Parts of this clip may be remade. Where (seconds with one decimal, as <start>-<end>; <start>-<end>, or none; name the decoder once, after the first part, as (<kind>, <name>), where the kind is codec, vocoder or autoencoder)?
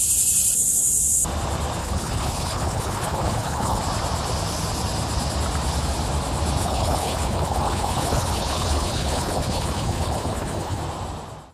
1.8-3.8 (codec, HILCodec); 6.6-10.8